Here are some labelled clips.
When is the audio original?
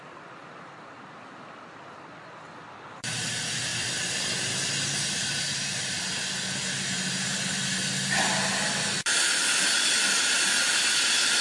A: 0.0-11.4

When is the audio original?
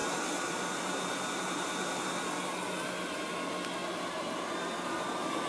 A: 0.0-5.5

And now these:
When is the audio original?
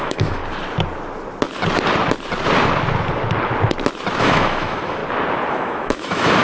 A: 0.4-4.2; 5.0-5.5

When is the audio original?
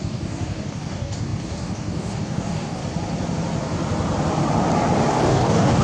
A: 2.8-5.1